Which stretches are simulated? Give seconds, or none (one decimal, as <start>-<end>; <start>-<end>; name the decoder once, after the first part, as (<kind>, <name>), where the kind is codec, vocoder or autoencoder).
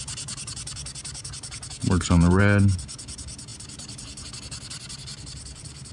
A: 1.8-2.4 (vocoder, BigVGAN v2); 3.5-4.3; 5.1-5.9